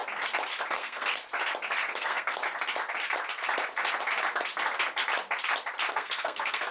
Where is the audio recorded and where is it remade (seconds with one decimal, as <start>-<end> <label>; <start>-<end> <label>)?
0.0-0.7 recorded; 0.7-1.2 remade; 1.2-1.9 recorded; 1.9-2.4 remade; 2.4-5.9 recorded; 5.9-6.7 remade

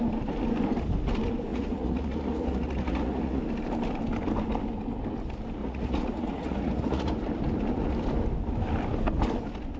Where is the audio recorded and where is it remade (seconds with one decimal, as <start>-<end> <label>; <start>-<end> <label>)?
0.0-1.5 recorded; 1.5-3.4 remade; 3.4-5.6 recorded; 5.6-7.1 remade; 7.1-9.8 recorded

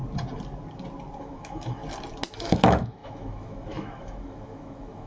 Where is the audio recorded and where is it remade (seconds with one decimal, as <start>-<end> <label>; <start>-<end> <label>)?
0.0-1.2 recorded; 1.2-1.8 remade; 1.8-2.3 recorded; 2.3-5.1 remade

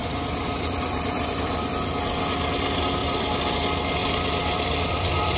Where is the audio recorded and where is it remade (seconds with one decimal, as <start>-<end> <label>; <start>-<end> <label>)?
0.0-1.7 remade; 1.7-3.0 recorded; 3.0-3.5 remade; 3.5-4.0 recorded; 4.0-5.4 remade